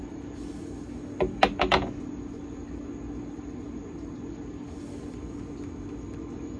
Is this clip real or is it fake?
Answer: real